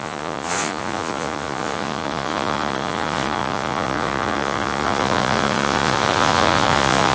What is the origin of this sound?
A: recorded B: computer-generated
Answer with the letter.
B